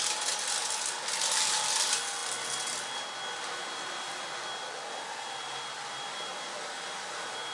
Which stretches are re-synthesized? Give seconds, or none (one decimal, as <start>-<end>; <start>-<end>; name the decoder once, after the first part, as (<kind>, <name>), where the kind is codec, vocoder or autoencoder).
none